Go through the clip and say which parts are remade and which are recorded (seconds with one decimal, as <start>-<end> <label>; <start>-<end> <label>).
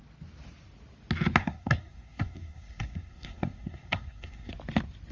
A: 0.0-1.4 recorded; 1.4-4.5 remade; 4.5-5.1 recorded